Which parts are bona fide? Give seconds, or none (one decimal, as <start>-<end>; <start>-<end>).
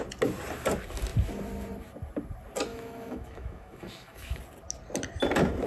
0.0-2.7; 4.4-5.7